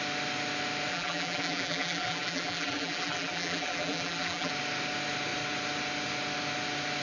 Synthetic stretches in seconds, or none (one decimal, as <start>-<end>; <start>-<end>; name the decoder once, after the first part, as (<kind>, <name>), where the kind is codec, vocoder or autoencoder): 0.9-4.5 (vocoder, BigVGAN v2)